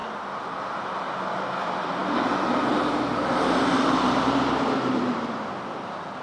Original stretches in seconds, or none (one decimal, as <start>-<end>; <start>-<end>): 0.0-6.2